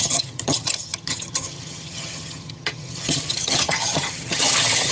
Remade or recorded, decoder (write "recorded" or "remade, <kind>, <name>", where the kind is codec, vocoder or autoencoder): remade, vocoder, HiFi-GAN